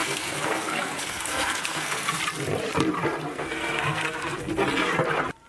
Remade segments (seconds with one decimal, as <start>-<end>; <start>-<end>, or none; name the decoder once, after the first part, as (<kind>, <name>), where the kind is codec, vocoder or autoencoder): 0.0-2.2 (codec, SNAC); 3.3-4.5